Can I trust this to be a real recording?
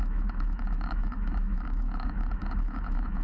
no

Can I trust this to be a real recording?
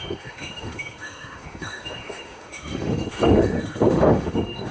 no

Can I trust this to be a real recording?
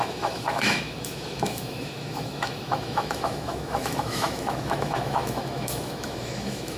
no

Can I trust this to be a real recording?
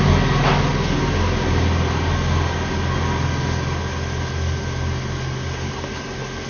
yes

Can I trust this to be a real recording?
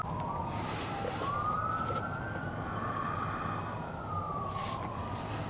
yes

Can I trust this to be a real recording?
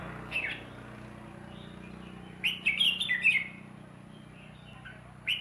yes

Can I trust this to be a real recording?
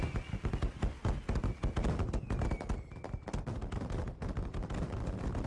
yes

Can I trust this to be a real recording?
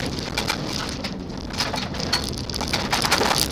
yes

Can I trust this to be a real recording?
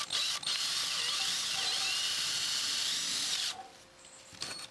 yes